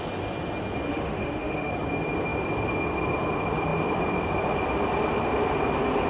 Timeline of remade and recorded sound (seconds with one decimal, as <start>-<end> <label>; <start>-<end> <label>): 0.0-0.9 recorded; 0.9-1.7 remade; 1.7-6.1 recorded